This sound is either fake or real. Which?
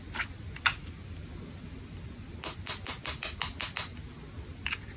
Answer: real